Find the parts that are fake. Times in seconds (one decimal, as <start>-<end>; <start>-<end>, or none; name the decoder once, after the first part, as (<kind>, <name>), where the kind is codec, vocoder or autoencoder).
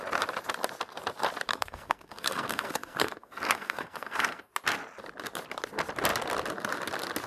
1.5-4.5 (codec, SNAC)